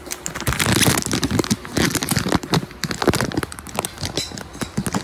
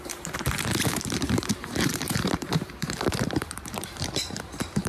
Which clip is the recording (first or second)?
first